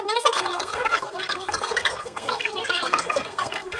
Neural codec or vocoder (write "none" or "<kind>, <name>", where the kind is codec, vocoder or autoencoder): codec, SNAC